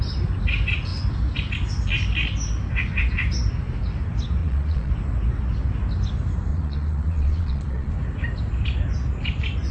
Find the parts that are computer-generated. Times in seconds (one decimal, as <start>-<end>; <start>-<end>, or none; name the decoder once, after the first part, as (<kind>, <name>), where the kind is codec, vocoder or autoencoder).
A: 4.4-4.9 (vocoder, Vocos); 6.5-7.9